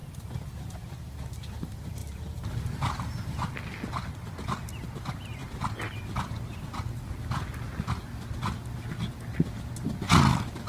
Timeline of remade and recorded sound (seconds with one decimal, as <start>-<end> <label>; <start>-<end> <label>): 0.0-0.6 remade; 0.6-2.0 recorded; 2.0-3.5 remade; 3.5-10.7 recorded